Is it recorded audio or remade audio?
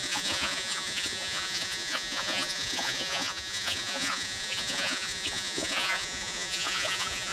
remade